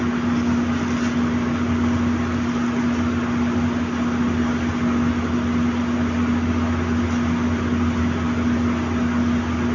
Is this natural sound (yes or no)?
yes